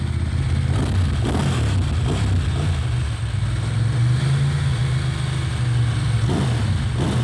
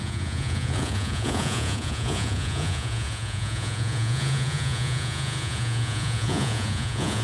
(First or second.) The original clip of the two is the first